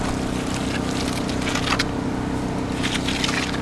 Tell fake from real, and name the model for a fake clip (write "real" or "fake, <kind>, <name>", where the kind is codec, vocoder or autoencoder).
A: real